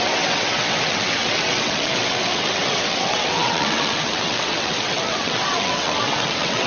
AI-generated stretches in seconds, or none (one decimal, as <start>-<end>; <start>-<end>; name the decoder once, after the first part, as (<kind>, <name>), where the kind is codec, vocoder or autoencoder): 0.0-6.7 (vocoder, WaveNeXt)